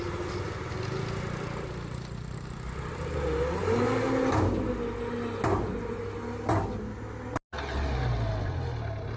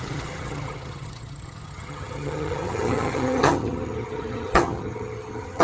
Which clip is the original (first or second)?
first